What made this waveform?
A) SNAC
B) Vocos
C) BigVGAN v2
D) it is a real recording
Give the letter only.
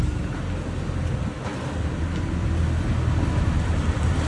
D